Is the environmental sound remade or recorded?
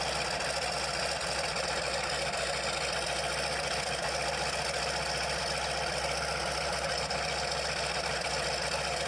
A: recorded